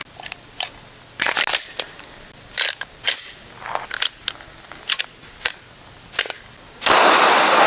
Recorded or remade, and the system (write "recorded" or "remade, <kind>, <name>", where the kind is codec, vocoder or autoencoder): recorded